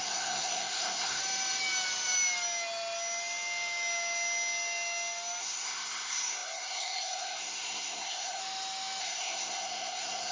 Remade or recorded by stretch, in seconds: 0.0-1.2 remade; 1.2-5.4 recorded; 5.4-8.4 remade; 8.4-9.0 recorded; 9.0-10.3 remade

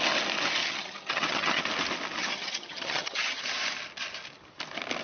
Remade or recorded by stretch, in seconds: 0.0-0.6 recorded; 0.6-1.6 remade; 1.6-2.2 recorded; 2.2-3.4 remade; 3.4-5.0 recorded

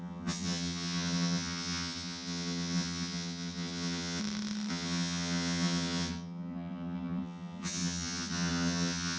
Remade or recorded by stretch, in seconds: 0.0-4.2 remade; 4.2-4.7 recorded; 4.7-9.2 remade

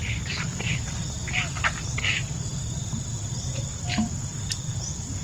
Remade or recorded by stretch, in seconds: 0.0-5.2 recorded

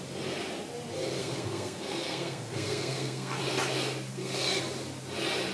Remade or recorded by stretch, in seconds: 0.0-1.2 recorded; 1.2-3.4 remade; 3.4-4.1 recorded; 4.1-4.6 remade; 4.6-5.5 recorded